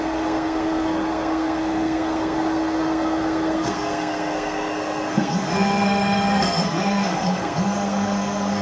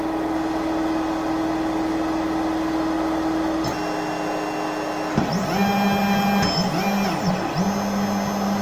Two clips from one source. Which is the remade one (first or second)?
first